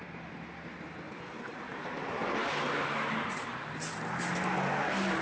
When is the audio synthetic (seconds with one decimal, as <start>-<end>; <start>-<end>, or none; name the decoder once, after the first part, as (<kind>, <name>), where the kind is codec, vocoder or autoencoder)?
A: none